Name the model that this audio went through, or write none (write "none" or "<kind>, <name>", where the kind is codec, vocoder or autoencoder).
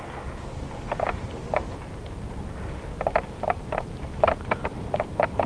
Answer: none